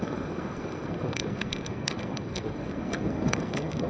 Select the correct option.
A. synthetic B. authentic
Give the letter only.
A